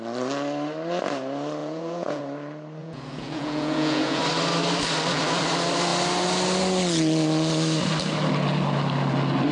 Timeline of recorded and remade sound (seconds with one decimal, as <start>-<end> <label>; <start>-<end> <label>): 0.0-1.6 recorded; 1.6-2.2 remade; 2.2-2.8 recorded; 2.8-4.2 remade; 4.2-9.5 recorded